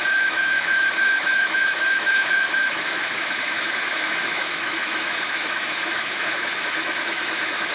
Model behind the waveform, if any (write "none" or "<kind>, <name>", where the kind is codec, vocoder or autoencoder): autoencoder, DAC-VAE